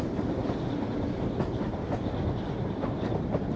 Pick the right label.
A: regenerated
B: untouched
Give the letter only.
B